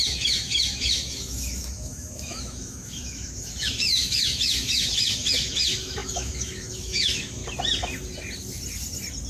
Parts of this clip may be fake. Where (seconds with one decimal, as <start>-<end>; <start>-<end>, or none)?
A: 0.0-7.4

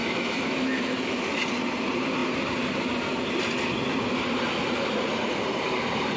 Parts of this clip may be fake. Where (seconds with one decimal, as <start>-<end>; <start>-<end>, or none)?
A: 0.0-1.4

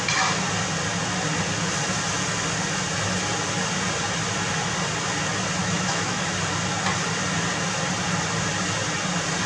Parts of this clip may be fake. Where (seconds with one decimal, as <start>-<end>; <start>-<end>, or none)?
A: 5.6-6.3

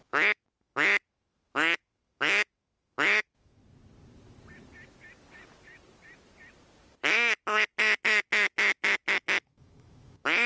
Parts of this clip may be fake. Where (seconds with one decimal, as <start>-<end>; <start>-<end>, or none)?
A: 0.0-3.6; 8.0-10.5

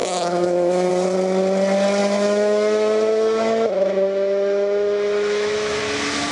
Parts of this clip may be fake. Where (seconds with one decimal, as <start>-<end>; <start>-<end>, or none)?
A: 0.0-0.9; 2.0-5.8